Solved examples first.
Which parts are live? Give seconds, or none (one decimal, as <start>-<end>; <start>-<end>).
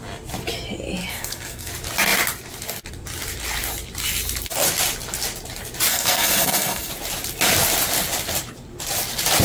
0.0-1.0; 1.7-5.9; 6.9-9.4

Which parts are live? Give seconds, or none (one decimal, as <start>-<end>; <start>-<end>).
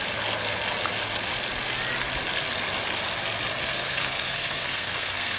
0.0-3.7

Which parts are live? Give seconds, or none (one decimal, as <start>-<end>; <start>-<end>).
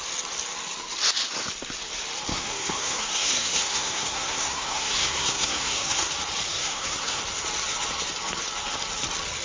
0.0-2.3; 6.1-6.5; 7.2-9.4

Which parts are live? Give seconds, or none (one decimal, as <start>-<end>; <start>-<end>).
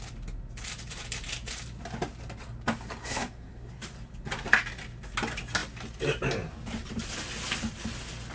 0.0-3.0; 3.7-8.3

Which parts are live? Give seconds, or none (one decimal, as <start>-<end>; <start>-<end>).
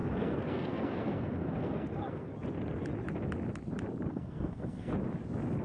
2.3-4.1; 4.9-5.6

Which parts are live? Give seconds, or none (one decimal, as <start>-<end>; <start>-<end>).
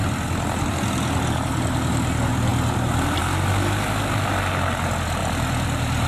0.0-6.1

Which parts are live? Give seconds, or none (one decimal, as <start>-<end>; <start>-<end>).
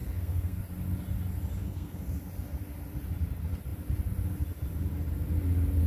0.6-1.6; 2.2-5.9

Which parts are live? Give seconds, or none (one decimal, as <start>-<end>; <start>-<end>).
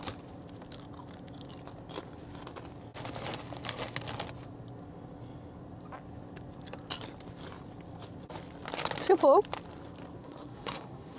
0.0-10.2